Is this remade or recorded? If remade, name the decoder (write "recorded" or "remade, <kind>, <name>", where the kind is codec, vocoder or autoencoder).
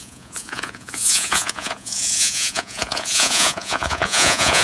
remade, vocoder, Vocos